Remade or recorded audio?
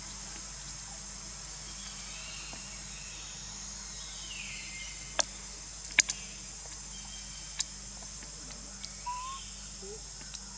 recorded